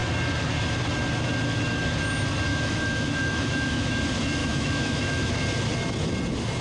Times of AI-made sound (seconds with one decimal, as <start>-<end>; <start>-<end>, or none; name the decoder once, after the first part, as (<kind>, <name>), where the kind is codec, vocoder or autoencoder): 2.5-4.0 (autoencoder, DAC-VAE); 4.4-5.3